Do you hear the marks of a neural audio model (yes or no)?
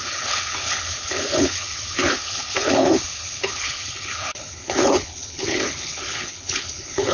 yes